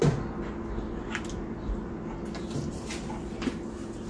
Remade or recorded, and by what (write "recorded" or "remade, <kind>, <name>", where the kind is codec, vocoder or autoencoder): recorded